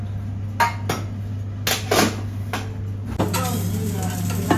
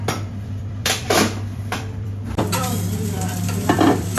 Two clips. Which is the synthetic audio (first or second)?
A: second